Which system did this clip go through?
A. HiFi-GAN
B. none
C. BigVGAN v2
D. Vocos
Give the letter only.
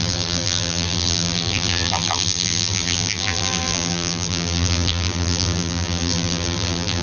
C